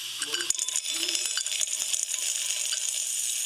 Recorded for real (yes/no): yes